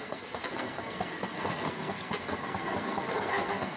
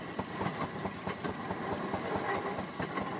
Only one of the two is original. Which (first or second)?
second